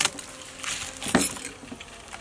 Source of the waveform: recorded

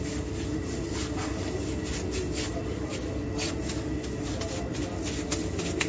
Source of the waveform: recorded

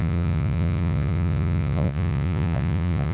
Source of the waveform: remade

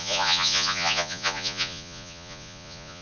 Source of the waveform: remade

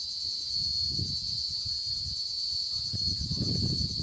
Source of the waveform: remade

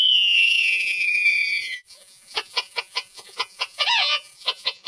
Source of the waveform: remade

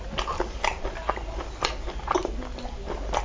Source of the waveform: recorded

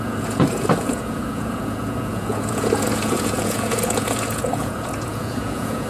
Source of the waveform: remade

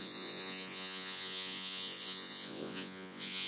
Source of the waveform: remade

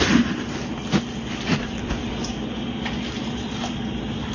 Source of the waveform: recorded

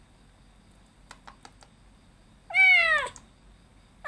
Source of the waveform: recorded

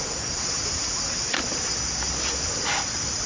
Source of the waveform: recorded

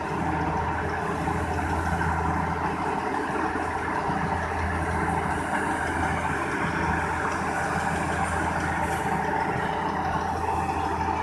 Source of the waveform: recorded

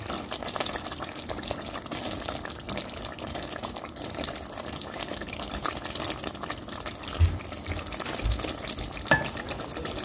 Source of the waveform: recorded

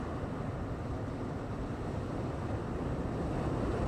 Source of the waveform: recorded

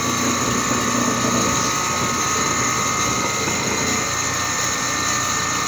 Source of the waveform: recorded